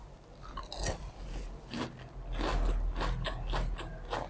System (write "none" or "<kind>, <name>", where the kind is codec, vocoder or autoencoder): none